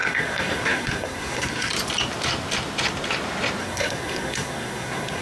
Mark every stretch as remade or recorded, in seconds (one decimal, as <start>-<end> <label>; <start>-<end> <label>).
0.0-1.7 remade; 1.7-3.6 recorded; 3.6-5.2 remade